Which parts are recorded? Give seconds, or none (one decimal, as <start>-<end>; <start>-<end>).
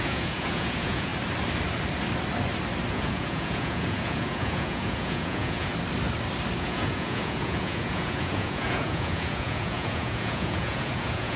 1.1-2.9; 5.7-6.6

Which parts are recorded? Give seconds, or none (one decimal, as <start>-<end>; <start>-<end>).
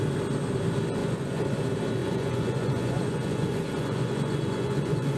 0.0-1.0; 1.5-2.0